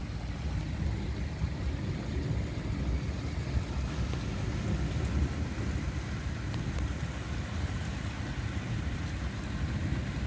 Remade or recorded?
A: recorded